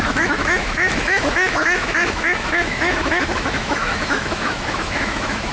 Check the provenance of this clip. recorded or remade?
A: remade